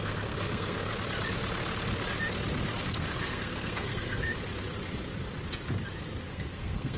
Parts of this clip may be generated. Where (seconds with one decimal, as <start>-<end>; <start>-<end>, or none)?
0.0-0.9; 2.8-4.2; 6.3-7.0